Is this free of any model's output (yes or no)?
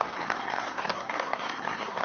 no